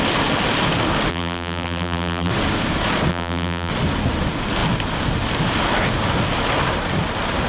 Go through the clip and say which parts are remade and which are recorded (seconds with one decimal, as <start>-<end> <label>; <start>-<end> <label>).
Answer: 0.0-1.1 recorded; 1.1-2.3 remade; 2.3-3.1 recorded; 3.1-3.7 remade; 3.7-7.5 recorded